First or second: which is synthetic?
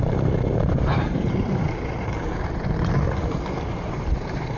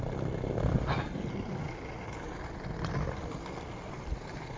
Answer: first